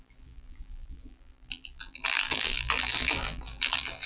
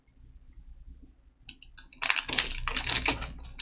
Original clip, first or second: second